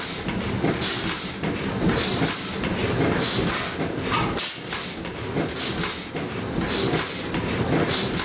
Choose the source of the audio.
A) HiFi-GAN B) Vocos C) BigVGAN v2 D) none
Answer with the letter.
D